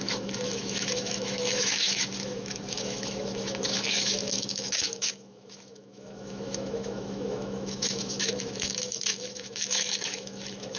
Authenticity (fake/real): fake